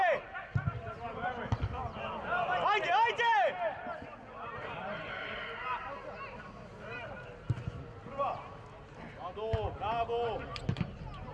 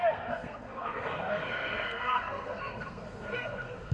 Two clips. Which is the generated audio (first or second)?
second